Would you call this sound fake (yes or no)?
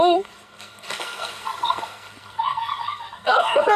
yes